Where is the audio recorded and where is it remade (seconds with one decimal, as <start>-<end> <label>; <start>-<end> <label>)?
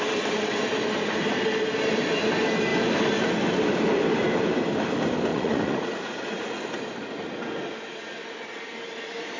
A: 0.0-5.3 recorded; 5.3-6.6 remade; 6.6-9.4 recorded